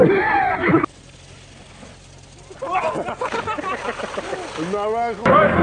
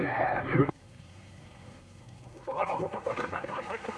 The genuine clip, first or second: first